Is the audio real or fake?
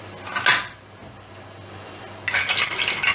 real